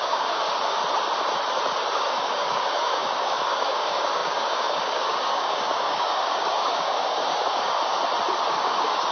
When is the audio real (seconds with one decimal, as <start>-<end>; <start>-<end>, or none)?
0.8-1.9; 8.0-8.5